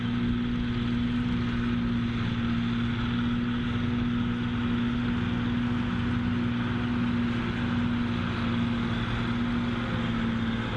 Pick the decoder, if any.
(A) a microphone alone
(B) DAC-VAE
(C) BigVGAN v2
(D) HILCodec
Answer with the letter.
A